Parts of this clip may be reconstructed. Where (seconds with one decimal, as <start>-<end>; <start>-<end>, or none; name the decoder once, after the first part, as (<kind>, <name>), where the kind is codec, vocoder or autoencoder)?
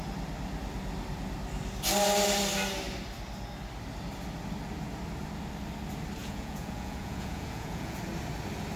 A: 6.2-8.0 (vocoder, Vocos)